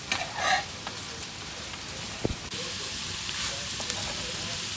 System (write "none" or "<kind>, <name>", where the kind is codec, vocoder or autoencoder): vocoder, BigVGAN v2